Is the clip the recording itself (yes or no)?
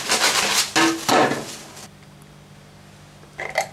yes